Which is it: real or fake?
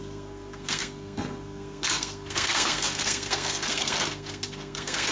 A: fake